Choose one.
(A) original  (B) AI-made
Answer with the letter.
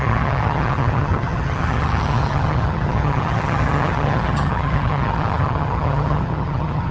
B